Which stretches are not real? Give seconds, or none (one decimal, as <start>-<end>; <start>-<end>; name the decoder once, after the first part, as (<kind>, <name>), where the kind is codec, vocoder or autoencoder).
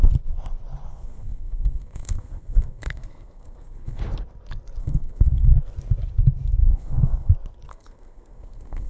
0.9-4.0 (codec, SNAC); 4.8-5.5; 6.6-7.3; 7.7-8.9